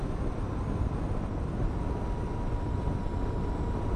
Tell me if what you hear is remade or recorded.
recorded